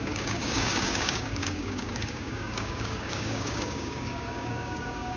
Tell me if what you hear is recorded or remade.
remade